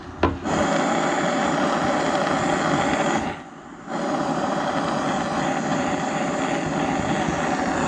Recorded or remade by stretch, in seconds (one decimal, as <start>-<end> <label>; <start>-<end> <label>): 0.0-3.7 recorded; 3.7-4.7 remade; 4.7-5.7 recorded; 5.7-6.4 remade; 6.4-7.9 recorded